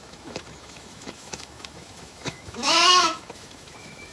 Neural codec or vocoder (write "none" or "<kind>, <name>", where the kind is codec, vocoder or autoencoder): autoencoder, DAC-VAE